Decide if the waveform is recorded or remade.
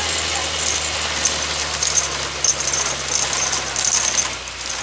recorded